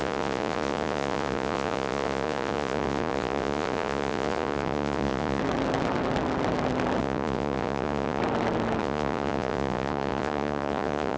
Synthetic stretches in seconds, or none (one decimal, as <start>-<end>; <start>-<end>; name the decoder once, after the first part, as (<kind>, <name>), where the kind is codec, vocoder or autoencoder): 0.0-5.4 (vocoder, Vocos); 7.0-8.2; 8.8-11.2